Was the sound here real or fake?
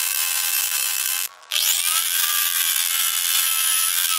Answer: fake